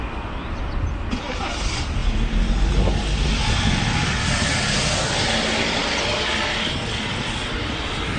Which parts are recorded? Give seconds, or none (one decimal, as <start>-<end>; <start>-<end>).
0.0-8.2